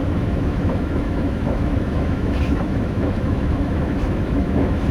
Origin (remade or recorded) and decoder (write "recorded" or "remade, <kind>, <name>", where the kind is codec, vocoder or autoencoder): remade, autoencoder, DAC-VAE